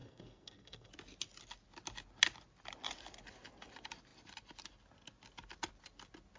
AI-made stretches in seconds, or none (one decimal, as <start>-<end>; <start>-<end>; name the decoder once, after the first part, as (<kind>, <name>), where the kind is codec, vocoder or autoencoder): 0.0-0.9 (codec, SNAC)